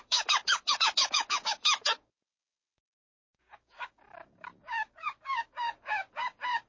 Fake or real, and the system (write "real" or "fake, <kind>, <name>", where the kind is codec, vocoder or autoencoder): fake, codec, DAC